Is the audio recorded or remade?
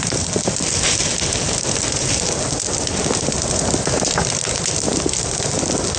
recorded